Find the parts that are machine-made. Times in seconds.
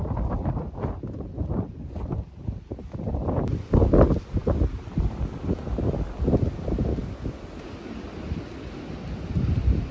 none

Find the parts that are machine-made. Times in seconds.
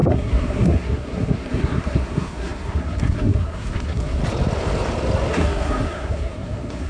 0.0-4.2 (codec, SNAC); 5.3-6.9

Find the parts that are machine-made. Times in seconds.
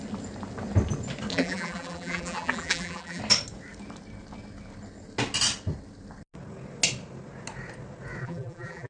1.3-3.2 (vocoder, BigVGAN v2); 8.2-8.9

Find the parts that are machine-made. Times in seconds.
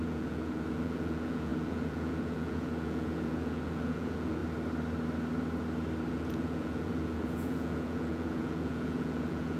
0.0-4.4 (vocoder, Vocos); 6.1-9.6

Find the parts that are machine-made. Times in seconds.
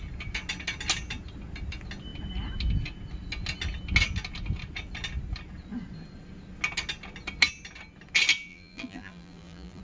8.5-9.8 (vocoder, BigVGAN v2)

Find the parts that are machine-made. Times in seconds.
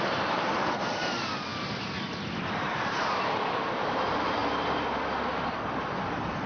0.0-1.5 (vocoder, BigVGAN v2); 2.4-4.4; 5.5-6.5